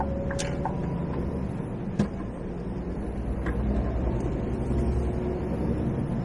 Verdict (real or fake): real